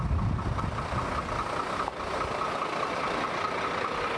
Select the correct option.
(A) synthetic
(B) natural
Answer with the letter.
B